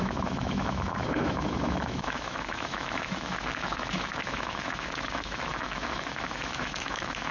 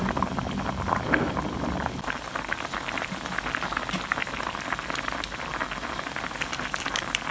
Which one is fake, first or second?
first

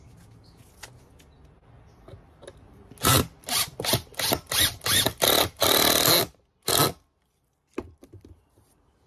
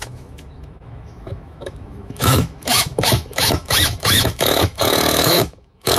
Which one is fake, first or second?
second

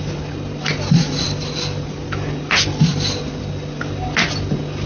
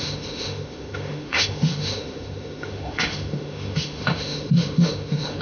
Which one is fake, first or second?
second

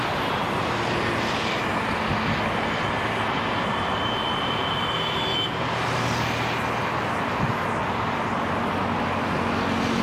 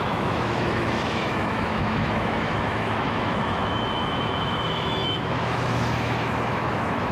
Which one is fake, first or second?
second